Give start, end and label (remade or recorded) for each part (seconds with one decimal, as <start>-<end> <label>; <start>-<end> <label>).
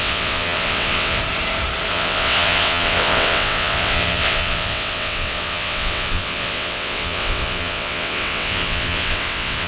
0.0-1.2 remade; 1.2-1.9 recorded; 1.9-9.7 remade